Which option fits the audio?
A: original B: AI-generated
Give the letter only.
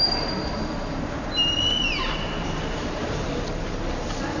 A